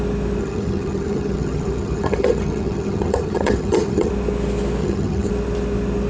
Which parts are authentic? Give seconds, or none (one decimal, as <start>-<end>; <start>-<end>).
0.0-0.4; 4.1-4.8; 5.3-6.1